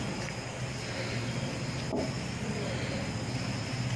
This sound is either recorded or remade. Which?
recorded